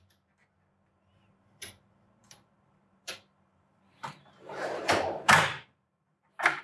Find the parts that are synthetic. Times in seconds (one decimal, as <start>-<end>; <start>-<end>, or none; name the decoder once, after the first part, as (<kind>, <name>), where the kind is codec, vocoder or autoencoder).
2.2-6.6 (vocoder, BigVGAN v2)